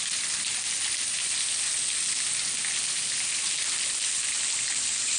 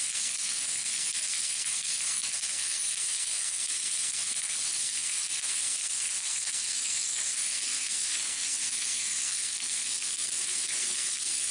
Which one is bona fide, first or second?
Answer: first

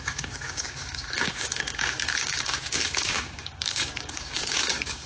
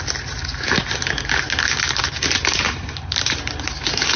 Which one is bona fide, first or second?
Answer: second